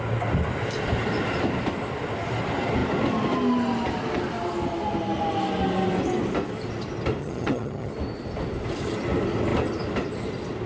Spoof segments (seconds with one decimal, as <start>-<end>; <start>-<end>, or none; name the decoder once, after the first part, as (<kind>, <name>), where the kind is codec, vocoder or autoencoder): 7.2-7.9 (vocoder, HiFi-GAN)